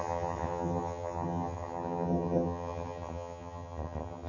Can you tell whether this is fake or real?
fake